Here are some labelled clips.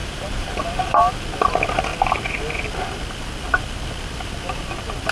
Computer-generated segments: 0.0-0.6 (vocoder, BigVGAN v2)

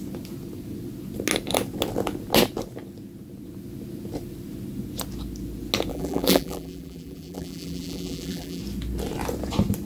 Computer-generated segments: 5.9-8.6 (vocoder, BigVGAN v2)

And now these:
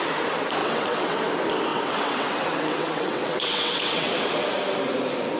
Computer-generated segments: 0.6-1.2 (vocoder, WaveNeXt); 1.7-4.1

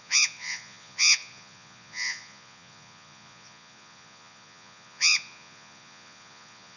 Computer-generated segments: 0.0-6.8 (vocoder, Vocos)

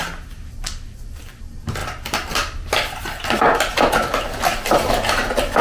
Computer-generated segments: 1.8-5.6 (vocoder, BigVGAN v2)

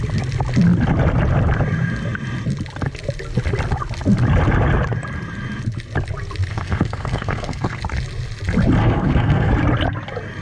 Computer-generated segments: 6.5-7.8 (codec, SNAC); 8.8-9.5